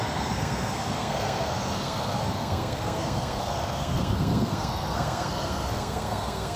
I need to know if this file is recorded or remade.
remade